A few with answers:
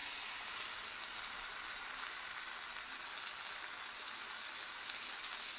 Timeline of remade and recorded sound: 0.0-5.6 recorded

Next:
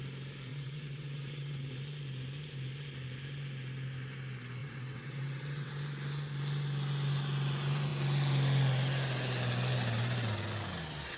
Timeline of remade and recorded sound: 0.0-0.5 recorded; 0.5-1.7 remade; 1.7-4.6 recorded; 4.6-5.7 remade; 5.7-11.2 recorded

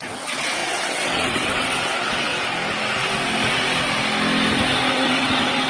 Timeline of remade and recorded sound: 0.0-2.3 remade; 2.3-4.9 recorded; 4.9-5.7 remade